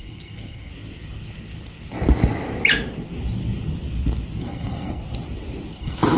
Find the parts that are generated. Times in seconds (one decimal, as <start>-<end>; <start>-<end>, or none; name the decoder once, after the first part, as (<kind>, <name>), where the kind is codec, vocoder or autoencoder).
0.0-0.7 (codec, SNAC); 4.4-5.0; 5.8-6.2